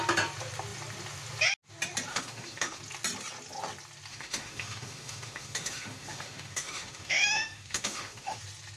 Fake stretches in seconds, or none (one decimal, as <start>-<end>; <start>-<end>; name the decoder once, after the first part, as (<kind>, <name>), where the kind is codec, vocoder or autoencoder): 2.1-2.8 (autoencoder, DAC-VAE); 4.1-8.4